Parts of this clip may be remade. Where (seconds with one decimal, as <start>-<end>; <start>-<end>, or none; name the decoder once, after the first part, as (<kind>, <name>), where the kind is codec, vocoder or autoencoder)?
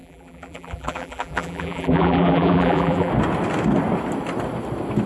0.0-3.1 (vocoder, BigVGAN v2)